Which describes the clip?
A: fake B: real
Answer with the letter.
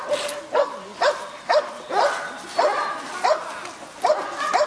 B